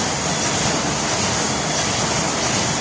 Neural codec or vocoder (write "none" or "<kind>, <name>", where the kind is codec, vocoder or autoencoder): none